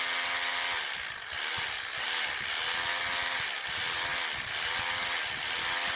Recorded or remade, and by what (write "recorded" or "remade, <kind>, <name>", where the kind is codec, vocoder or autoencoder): recorded